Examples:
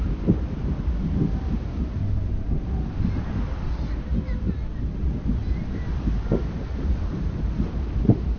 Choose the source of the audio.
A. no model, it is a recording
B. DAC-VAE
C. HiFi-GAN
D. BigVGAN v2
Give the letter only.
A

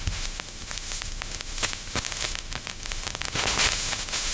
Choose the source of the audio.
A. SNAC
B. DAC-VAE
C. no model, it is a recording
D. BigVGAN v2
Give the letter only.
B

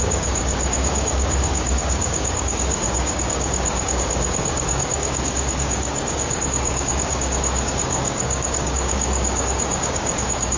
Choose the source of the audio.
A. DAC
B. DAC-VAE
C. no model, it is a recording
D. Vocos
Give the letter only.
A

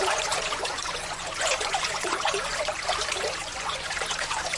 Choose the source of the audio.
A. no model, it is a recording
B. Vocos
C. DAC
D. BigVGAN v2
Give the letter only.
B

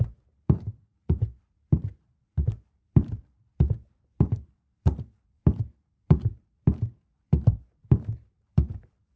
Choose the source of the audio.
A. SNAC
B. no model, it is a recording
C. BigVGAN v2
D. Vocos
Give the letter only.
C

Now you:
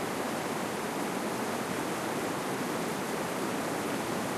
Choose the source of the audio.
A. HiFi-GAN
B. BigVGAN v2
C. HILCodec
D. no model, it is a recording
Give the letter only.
D